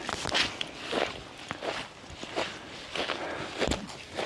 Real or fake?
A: real